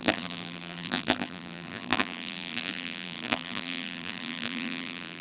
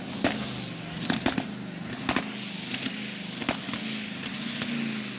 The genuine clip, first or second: second